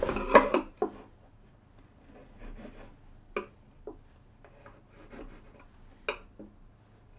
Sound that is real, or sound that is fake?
real